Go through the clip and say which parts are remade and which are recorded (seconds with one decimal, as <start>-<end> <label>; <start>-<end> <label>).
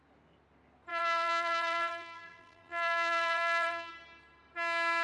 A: 0.0-0.9 recorded; 0.9-3.9 remade; 3.9-5.0 recorded